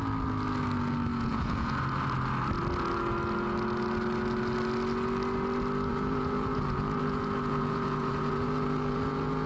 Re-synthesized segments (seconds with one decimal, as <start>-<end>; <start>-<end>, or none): 1.1-1.8; 5.9-9.5